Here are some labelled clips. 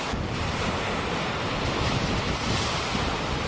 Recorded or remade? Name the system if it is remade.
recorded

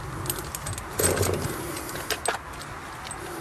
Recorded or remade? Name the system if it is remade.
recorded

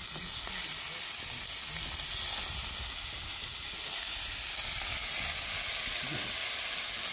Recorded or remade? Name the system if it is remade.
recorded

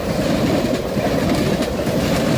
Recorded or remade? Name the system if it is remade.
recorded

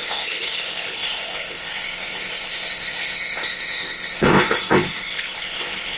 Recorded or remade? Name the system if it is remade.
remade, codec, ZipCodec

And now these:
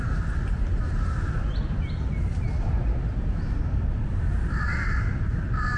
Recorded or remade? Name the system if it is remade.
recorded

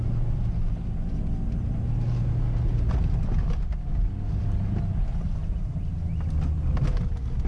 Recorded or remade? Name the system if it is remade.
recorded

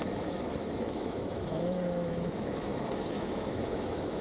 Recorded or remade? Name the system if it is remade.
remade, autoencoder, DAC-VAE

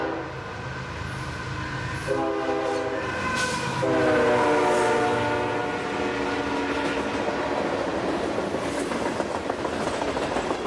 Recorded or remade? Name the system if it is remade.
recorded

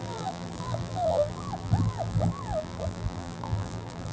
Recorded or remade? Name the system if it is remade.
remade, vocoder, BigVGAN v2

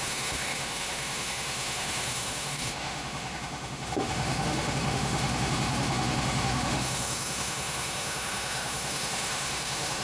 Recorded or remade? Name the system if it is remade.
remade, autoencoder, DAC-VAE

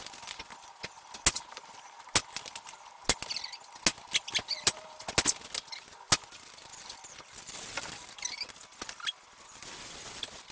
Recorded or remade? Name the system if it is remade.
recorded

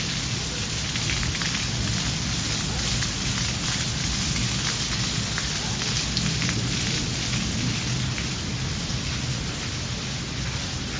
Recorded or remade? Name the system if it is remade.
recorded